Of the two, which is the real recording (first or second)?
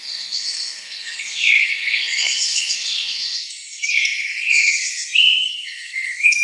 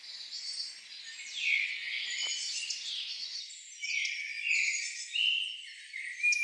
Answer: second